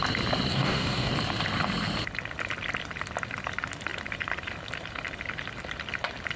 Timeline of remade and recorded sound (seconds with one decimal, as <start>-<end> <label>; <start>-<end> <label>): 0.0-0.5 recorded; 0.5-1.1 remade; 1.1-6.4 recorded